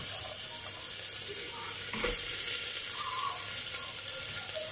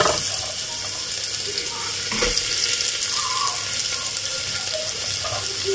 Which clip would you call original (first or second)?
second